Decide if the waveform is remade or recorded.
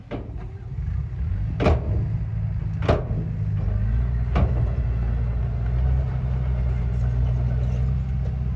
recorded